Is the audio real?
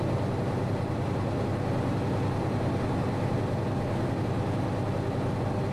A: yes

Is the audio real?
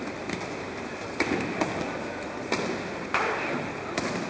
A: yes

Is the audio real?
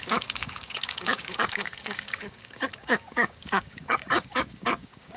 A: no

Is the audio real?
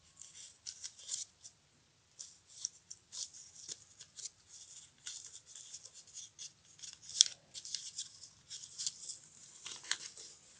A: yes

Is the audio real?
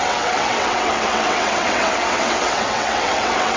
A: no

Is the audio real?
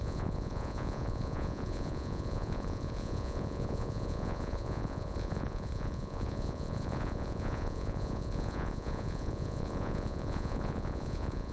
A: no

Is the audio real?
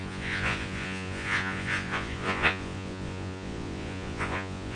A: no